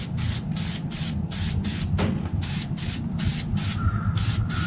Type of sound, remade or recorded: recorded